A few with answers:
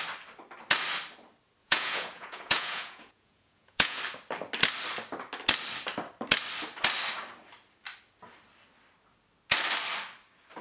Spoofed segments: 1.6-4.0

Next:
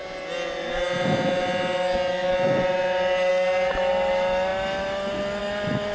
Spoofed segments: none

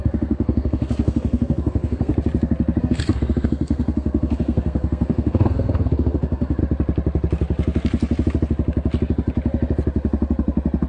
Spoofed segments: 0.0-2.1; 2.8-6.6

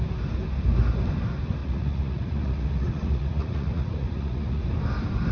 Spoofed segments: 1.6-4.6

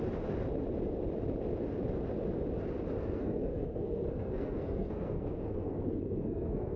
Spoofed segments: 3.0-6.8

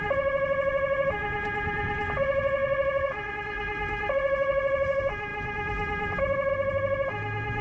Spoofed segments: none

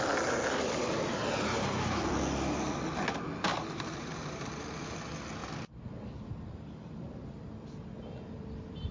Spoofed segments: 1.5-2.1; 3.5-4.2

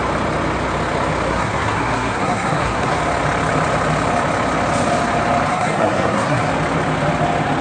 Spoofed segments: 1.3-3.0; 5.5-6.5